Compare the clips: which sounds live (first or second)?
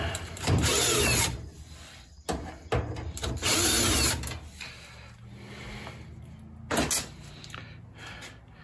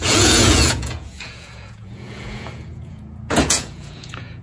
first